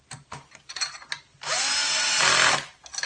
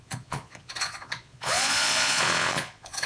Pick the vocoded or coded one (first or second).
second